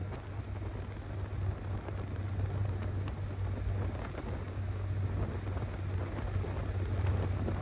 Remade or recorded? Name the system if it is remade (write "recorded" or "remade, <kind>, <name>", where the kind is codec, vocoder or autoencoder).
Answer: recorded